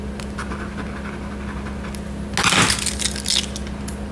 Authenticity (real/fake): real